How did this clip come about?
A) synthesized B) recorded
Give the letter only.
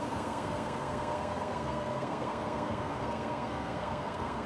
A